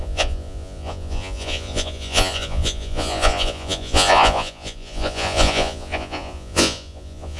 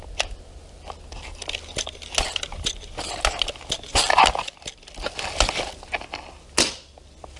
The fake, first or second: first